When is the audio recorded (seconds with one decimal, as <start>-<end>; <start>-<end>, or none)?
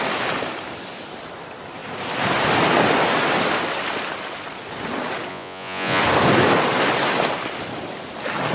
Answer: 0.0-5.3; 6.0-8.5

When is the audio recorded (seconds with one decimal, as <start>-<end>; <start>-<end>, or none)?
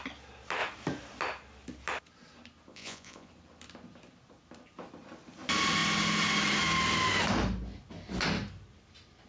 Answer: 0.0-2.7; 3.3-9.3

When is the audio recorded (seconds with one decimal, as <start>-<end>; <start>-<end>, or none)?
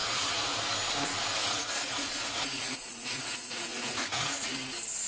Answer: 0.6-1.4; 4.5-5.1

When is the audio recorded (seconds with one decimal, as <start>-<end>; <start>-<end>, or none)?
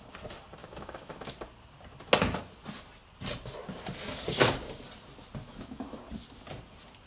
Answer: 0.0-0.6; 1.3-5.4; 6.0-7.1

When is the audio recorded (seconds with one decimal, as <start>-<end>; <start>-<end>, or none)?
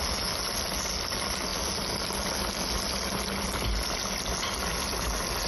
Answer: 0.0-5.5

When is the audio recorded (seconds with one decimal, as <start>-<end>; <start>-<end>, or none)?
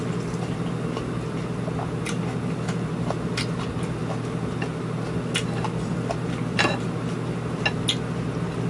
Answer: 0.0-8.7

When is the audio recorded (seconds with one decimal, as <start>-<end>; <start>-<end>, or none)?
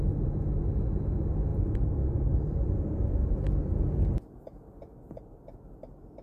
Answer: 0.0-6.2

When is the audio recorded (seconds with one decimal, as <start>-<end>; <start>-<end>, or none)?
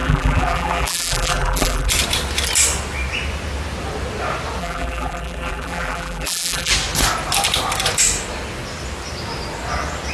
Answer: 1.9-4.6; 6.7-10.1